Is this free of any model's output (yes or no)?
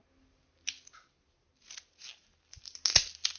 yes